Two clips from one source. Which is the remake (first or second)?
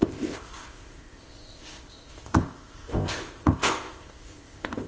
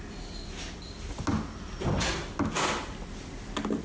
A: first